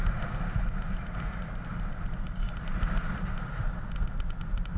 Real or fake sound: real